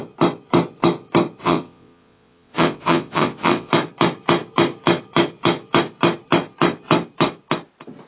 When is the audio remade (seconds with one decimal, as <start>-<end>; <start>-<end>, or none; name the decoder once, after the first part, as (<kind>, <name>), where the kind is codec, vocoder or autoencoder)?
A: 1.4-3.7 (vocoder, WaveNeXt)